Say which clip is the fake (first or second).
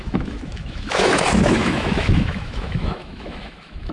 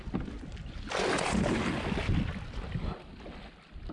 first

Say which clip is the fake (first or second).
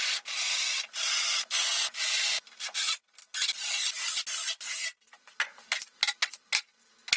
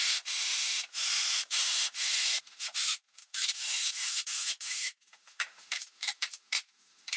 second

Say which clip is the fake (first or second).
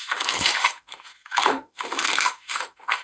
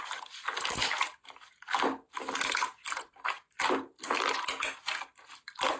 first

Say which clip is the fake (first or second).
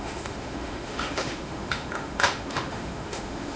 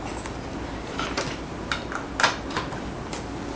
first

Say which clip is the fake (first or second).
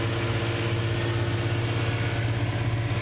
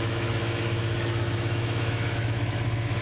second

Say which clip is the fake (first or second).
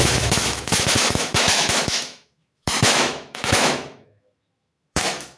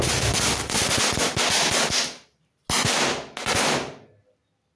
first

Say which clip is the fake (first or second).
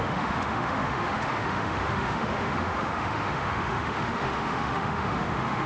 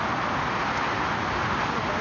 first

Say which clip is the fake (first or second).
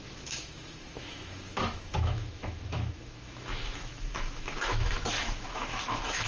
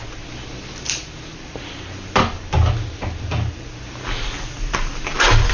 first